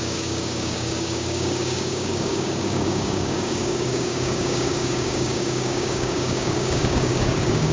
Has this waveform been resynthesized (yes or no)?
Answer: yes